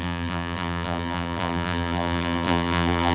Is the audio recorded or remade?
remade